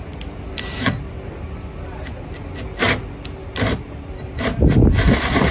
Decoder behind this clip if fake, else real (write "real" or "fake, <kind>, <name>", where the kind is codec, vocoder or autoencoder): real